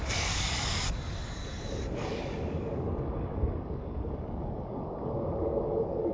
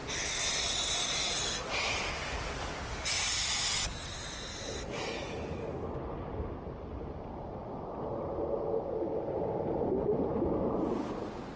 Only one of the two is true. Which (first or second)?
second